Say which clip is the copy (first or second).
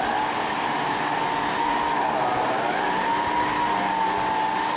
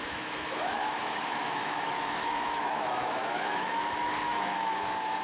second